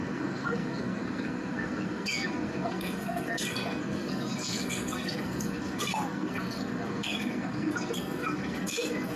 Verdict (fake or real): fake